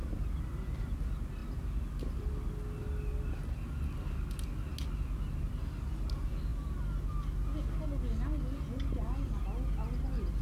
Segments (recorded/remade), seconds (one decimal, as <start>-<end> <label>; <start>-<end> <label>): 0.0-10.4 recorded